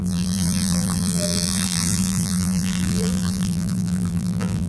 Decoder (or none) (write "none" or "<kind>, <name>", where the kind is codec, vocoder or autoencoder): vocoder, BigVGAN v2